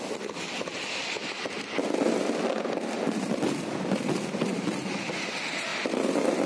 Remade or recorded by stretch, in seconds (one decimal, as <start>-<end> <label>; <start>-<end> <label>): 0.0-6.5 recorded